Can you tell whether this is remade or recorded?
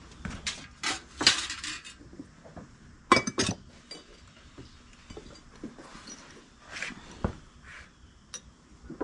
recorded